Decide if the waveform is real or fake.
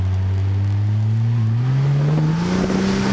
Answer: real